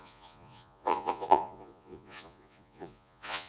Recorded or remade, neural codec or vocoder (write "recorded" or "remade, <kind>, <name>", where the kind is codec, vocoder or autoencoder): remade, vocoder, Vocos